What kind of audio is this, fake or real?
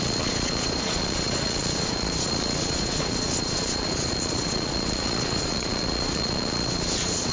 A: fake